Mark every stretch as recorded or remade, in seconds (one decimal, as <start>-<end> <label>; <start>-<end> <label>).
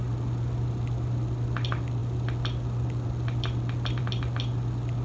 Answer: 0.0-5.0 recorded